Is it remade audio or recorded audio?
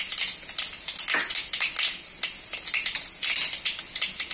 recorded